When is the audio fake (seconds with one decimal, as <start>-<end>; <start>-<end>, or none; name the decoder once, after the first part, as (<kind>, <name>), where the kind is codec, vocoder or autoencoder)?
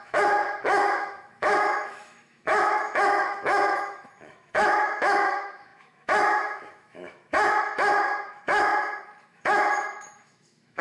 0.0-8.7 (autoencoder, DAC-VAE); 9.2-10.8